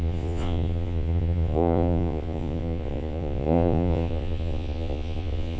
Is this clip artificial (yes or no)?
yes